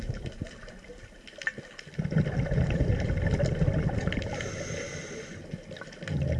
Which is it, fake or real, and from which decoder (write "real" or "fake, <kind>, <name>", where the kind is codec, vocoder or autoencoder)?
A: real